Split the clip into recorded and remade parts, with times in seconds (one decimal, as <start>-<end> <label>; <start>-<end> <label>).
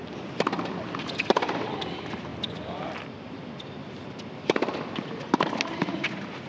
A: 0.0-6.5 recorded